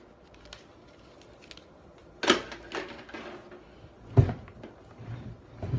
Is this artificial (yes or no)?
no